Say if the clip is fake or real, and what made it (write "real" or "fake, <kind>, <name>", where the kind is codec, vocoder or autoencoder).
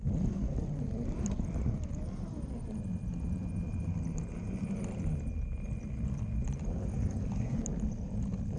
real